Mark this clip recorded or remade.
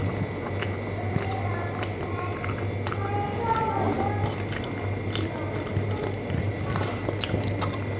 recorded